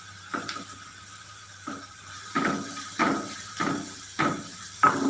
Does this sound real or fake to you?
fake